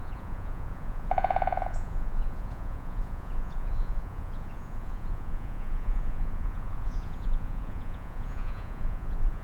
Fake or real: fake